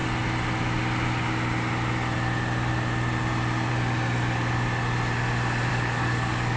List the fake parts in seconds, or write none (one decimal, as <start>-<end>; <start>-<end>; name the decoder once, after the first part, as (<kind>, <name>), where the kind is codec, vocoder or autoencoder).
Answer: 5.7-6.6 (codec, DAC)